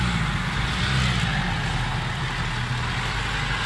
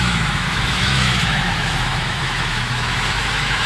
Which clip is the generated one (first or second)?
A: second